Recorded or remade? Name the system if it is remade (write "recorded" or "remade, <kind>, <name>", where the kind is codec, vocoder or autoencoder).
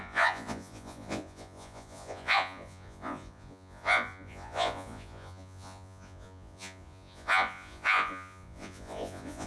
remade, vocoder, Vocos